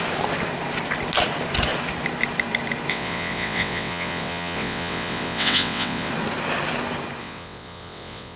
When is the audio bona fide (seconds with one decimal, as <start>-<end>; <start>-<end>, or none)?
0.0-2.9; 6.1-7.2